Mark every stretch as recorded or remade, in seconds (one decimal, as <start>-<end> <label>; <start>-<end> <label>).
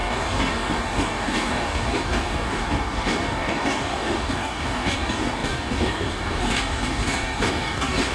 0.0-8.1 remade